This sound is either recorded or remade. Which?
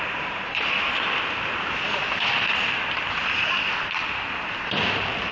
recorded